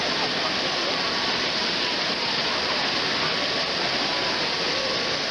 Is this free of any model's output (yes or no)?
yes